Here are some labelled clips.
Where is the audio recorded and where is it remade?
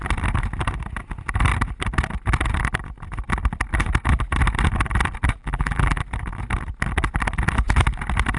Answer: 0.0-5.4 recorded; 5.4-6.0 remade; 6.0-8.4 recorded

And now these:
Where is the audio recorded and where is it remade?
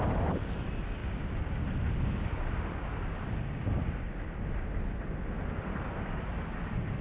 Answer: 0.0-7.0 recorded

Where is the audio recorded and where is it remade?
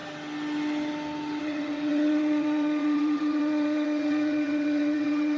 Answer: 0.0-1.4 recorded; 1.4-5.4 remade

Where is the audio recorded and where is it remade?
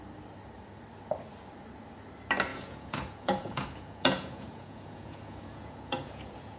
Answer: 0.0-2.5 recorded; 2.5-6.6 remade